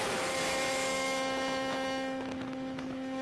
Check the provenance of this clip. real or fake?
fake